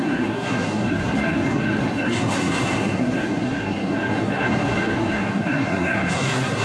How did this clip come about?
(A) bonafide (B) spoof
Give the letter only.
B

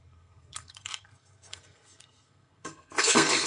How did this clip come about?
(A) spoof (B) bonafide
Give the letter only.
A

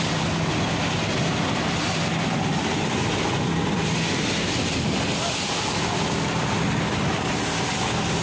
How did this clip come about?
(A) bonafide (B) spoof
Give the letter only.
A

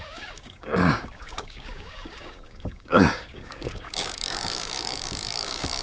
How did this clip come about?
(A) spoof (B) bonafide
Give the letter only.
A